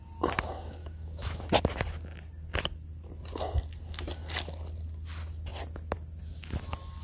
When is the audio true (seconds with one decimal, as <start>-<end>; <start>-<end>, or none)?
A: 0.0-0.8; 1.4-7.0